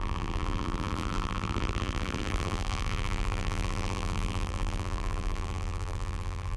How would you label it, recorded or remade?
remade